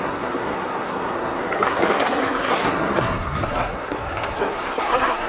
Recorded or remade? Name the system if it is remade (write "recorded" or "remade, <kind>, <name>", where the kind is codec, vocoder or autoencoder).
remade, codec, SNAC